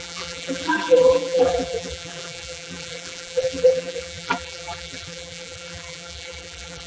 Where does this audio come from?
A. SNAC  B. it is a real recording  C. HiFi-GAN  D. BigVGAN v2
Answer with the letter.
D